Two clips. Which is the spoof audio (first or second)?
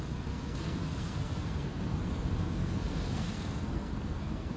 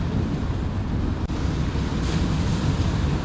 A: first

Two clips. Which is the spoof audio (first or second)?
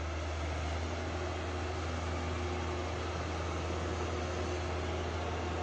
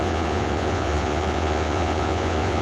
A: second